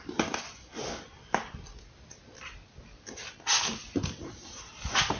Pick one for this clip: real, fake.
real